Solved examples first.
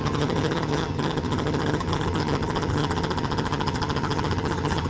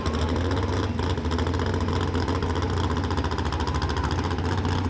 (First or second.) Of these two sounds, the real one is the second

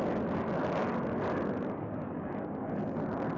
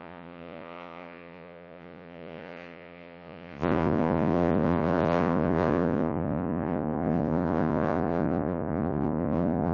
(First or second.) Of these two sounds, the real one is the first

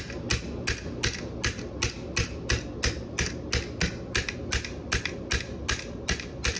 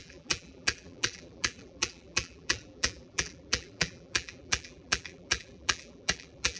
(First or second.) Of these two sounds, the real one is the first